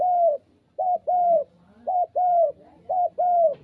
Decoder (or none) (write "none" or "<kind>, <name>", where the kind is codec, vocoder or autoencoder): none